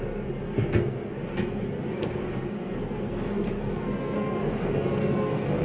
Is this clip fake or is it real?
fake